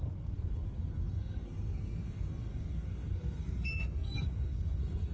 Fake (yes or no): yes